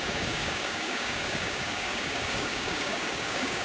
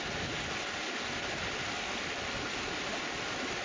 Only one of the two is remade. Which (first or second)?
first